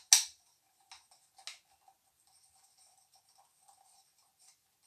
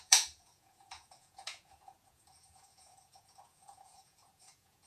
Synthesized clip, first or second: second